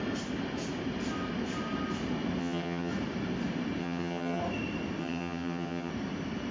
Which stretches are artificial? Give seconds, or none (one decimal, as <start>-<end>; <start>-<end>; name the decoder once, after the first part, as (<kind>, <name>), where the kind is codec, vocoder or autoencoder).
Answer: 2.4-2.9 (vocoder, HiFi-GAN); 3.8-4.4; 5.0-5.9